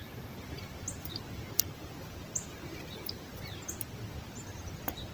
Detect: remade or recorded recorded